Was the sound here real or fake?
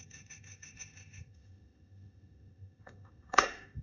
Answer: fake